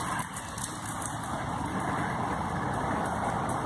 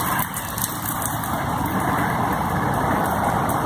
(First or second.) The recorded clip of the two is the first